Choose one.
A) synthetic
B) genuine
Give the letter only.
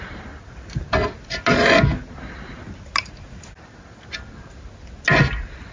B